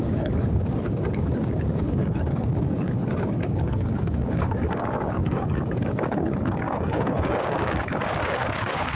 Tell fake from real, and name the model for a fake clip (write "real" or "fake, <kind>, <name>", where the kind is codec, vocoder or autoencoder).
fake, codec, DAC